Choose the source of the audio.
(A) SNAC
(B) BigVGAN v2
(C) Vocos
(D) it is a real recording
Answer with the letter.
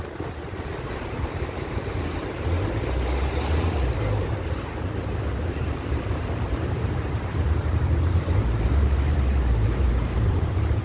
B